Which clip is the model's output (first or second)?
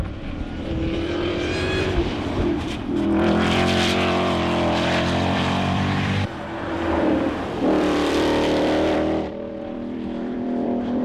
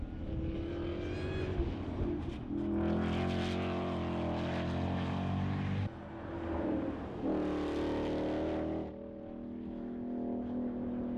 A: first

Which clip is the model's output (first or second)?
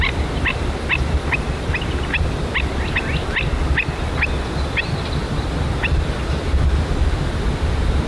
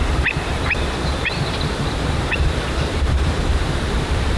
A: second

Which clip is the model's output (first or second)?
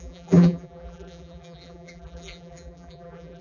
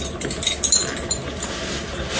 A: first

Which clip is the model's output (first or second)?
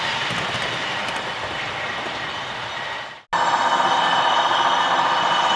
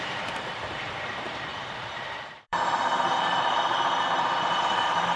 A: second